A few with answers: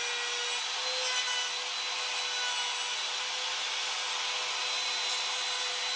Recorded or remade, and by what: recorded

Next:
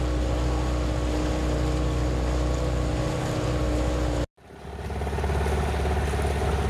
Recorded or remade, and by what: recorded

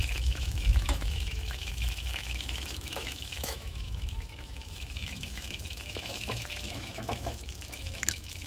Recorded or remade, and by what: remade, autoencoder, DAC-VAE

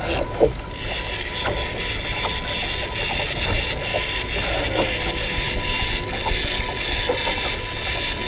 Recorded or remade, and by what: recorded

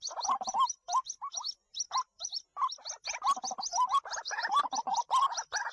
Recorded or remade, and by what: recorded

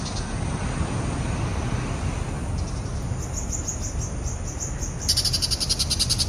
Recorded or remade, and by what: recorded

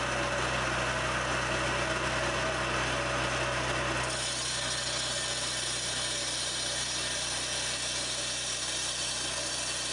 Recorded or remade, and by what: recorded